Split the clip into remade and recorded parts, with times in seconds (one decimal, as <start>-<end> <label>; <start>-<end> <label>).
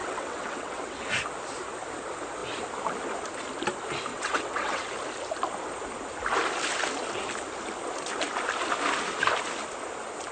0.0-1.1 remade; 1.1-4.1 recorded; 4.1-4.9 remade; 4.9-10.3 recorded